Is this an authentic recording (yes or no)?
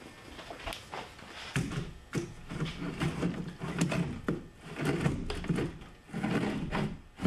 yes